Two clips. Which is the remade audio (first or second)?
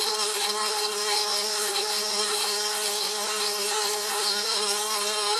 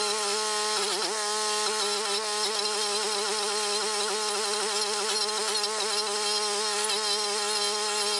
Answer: first